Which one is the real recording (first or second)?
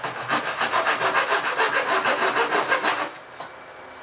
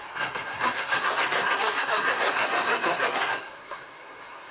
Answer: first